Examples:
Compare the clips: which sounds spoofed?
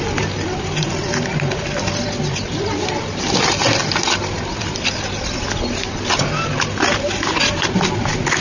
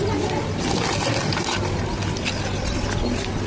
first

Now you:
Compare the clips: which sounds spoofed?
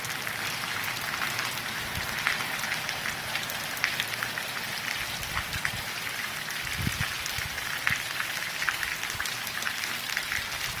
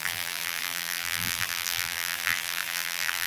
second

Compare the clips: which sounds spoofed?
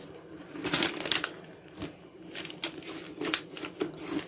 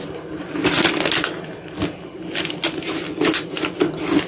first